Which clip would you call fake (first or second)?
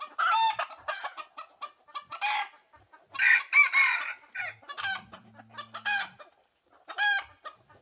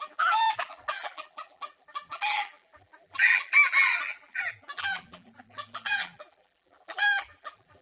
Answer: second